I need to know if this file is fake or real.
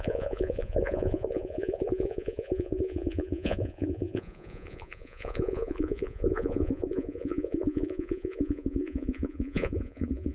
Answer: fake